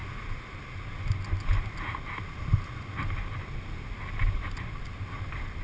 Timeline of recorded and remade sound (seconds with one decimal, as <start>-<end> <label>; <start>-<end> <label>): 0.0-5.6 recorded